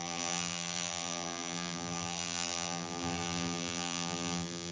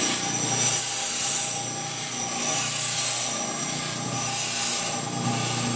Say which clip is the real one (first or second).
second